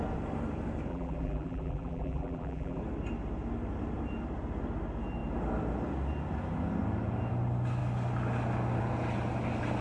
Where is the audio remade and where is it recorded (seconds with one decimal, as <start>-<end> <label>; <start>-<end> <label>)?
0.0-0.9 recorded; 0.9-2.8 remade; 2.8-9.8 recorded